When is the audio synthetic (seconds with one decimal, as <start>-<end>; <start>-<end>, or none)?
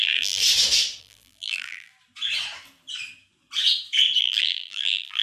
0.0-0.4; 1.0-1.9; 4.2-5.2